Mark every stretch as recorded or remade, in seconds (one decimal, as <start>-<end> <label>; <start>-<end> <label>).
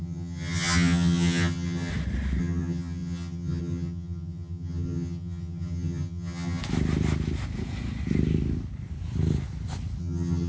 0.0-1.9 remade; 1.9-2.4 recorded; 2.4-6.6 remade; 6.6-10.0 recorded; 10.0-10.5 remade